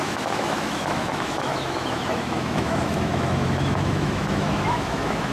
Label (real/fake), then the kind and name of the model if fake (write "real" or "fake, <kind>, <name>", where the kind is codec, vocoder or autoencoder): fake, autoencoder, DAC-VAE